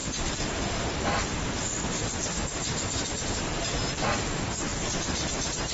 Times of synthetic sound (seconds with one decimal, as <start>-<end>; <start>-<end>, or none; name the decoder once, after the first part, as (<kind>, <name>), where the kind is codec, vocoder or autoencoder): none